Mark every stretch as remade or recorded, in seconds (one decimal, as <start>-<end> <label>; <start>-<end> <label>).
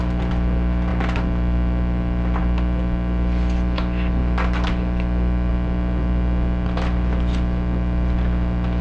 0.0-8.8 recorded